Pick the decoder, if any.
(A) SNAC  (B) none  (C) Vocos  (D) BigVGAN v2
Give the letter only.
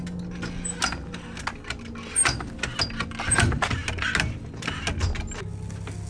B